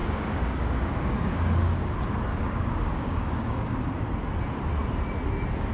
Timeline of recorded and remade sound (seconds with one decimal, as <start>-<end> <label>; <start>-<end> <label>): 0.0-1.9 remade; 1.9-2.3 recorded; 2.3-3.7 remade; 3.7-5.7 recorded